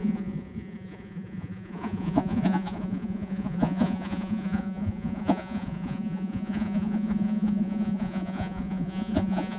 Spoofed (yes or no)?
yes